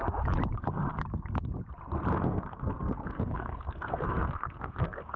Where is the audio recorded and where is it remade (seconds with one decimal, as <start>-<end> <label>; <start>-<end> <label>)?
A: 0.0-2.1 recorded; 2.1-5.2 remade